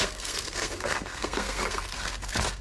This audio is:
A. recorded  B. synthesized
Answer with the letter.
B